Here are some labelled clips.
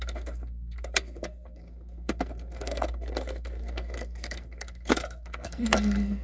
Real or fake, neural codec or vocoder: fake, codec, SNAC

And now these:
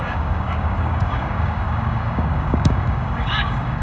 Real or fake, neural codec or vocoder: fake, codec, DAC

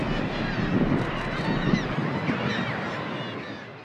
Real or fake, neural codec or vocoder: real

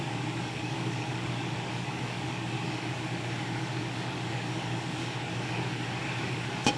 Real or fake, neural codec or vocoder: fake, codec, DAC